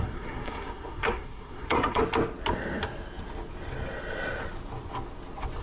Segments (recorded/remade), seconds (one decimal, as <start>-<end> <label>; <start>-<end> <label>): 0.0-2.0 remade; 2.0-5.6 recorded